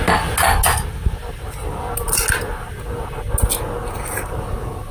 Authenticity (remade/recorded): recorded